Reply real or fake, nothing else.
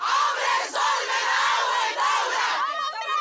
real